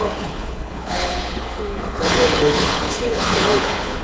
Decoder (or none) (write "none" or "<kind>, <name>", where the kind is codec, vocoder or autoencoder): codec, HILCodec